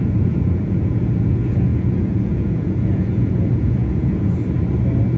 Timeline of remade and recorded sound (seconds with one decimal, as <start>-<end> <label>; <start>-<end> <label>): 0.0-4.4 remade; 4.4-5.2 recorded